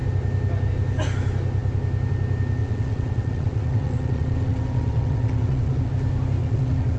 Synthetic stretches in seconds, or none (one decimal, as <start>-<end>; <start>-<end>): 2.6-5.9; 6.4-7.0